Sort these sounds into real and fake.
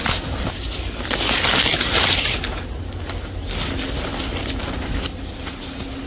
real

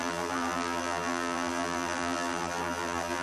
fake